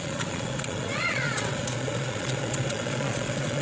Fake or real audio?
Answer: fake